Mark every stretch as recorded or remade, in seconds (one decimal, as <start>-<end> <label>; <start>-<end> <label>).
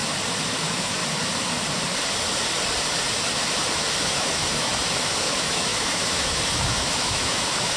0.0-0.6 recorded; 0.6-1.0 remade; 1.0-4.0 recorded; 4.0-4.7 remade; 4.7-5.2 recorded; 5.2-7.8 remade